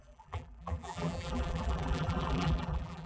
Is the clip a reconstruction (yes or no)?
yes